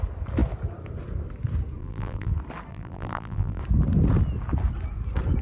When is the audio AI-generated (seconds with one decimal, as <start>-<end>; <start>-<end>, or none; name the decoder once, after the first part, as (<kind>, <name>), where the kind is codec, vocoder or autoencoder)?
1.8-2.3 (vocoder, BigVGAN v2); 2.7-3.6